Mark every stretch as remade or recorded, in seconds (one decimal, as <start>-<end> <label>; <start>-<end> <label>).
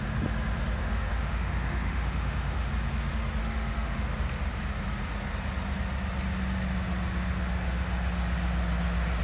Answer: 0.0-0.8 recorded; 0.8-2.7 remade; 2.7-3.4 recorded; 3.4-4.0 remade; 4.0-9.2 recorded